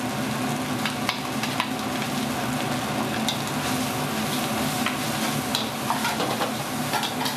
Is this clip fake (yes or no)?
no